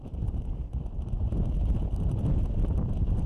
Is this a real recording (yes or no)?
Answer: yes